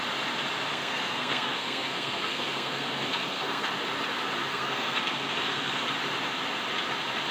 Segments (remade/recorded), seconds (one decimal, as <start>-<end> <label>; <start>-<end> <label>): 0.0-0.7 recorded; 0.7-3.7 remade; 3.7-4.5 recorded; 4.5-5.9 remade; 5.9-7.3 recorded